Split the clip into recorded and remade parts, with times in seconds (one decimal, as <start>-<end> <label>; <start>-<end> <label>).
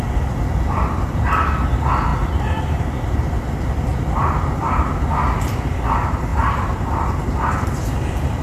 0.0-2.1 recorded; 2.1-2.6 remade; 2.6-3.9 recorded; 3.9-4.9 remade; 4.9-6.3 recorded; 6.3-7.6 remade; 7.6-8.4 recorded